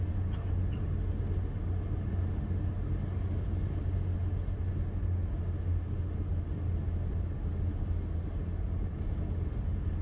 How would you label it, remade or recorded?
recorded